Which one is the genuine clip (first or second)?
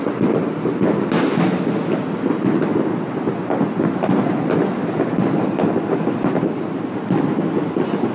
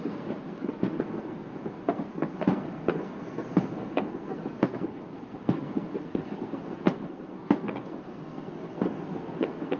first